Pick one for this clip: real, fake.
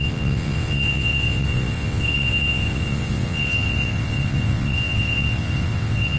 fake